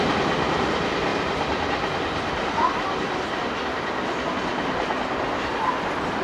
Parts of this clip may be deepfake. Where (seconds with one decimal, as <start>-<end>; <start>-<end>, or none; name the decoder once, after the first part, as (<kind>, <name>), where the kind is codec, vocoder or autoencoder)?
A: none